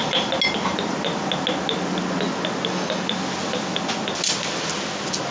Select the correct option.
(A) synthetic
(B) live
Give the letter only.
B